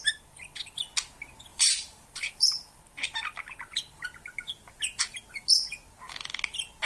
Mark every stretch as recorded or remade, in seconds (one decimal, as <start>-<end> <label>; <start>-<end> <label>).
0.0-1.5 recorded; 1.5-2.8 remade; 2.8-6.9 recorded